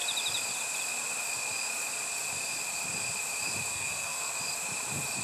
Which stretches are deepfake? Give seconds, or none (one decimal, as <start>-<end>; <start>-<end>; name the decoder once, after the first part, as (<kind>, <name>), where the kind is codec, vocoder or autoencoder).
3.7-4.3 (codec, SNAC)